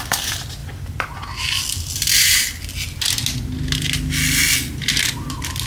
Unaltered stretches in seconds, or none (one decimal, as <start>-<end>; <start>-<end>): 0.0-5.7